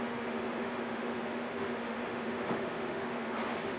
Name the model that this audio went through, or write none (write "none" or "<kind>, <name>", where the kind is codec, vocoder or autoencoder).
autoencoder, DAC-VAE